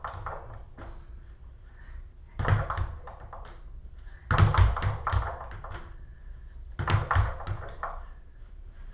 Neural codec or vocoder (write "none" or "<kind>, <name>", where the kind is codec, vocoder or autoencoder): none